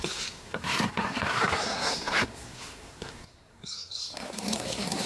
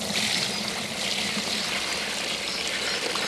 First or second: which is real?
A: second